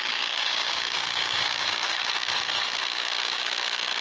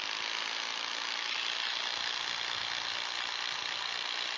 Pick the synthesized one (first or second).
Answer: first